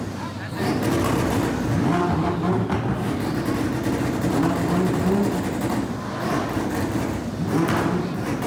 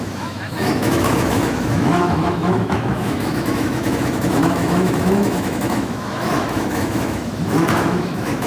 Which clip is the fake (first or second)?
second